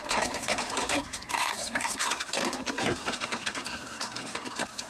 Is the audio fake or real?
fake